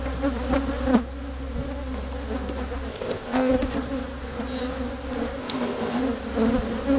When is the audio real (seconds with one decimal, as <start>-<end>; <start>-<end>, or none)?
0.0-2.9; 3.5-5.4; 6.0-7.0